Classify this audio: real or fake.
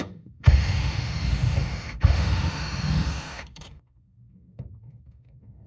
fake